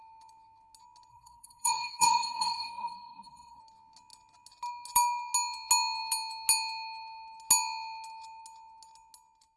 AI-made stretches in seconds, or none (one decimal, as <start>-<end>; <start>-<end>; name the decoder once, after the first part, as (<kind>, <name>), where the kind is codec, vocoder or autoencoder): 1.1-3.6 (codec, SNAC)